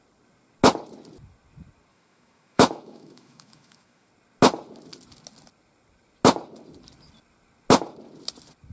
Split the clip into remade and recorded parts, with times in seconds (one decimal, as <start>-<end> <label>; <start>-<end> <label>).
0.0-1.9 recorded; 1.9-4.1 remade; 4.1-8.7 recorded